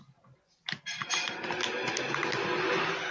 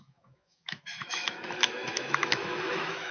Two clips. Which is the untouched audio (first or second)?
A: first